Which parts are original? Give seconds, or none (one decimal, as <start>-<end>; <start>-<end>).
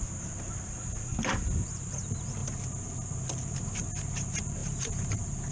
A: 0.0-5.5